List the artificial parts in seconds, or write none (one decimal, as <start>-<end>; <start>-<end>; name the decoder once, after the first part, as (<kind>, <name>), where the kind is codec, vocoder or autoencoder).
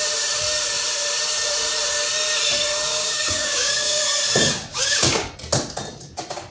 2.9-4.0 (codec, DAC); 4.7-5.3